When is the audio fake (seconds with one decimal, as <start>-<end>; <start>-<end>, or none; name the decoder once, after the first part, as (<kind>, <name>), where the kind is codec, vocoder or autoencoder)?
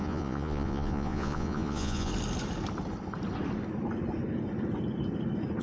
0.0-2.1 (vocoder, Vocos)